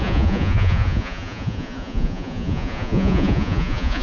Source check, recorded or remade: remade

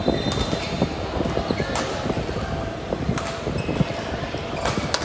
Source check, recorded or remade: recorded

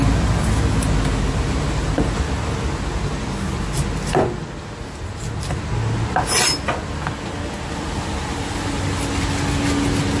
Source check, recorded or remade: recorded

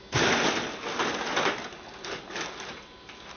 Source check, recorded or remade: recorded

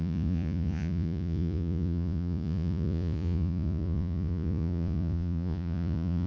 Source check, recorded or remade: remade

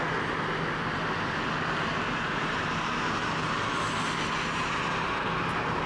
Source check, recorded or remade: recorded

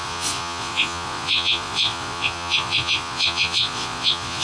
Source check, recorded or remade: remade